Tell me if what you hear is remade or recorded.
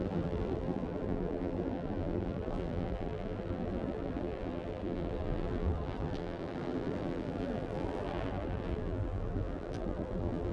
remade